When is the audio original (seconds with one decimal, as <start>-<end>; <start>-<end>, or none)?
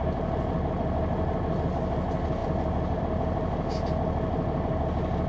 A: 0.0-5.3